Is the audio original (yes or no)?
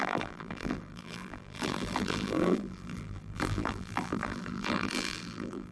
no